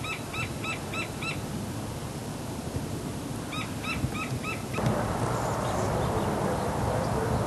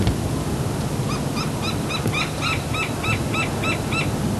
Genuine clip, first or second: second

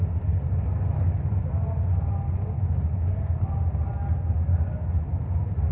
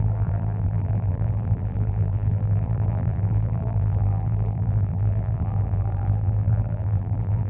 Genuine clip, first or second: first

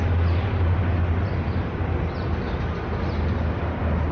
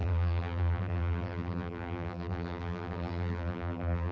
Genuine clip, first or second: first